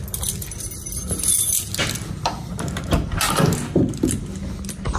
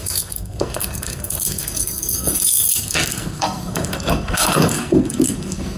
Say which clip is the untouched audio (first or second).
first